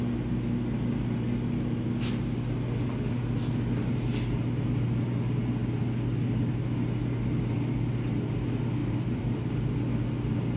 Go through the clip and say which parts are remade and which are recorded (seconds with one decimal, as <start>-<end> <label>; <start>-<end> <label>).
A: 0.0-8.8 recorded; 8.8-9.4 remade; 9.4-10.6 recorded